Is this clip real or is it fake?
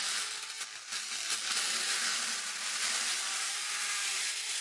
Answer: real